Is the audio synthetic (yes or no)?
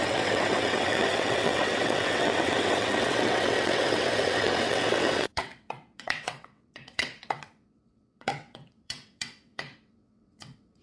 yes